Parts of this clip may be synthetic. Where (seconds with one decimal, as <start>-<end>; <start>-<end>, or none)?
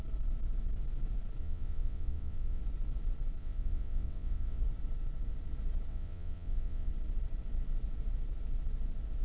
1.4-2.6; 3.4-4.6; 5.9-6.9